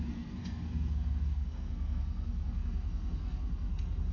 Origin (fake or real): fake